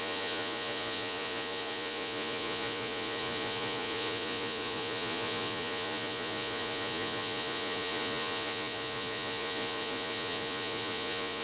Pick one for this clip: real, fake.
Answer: fake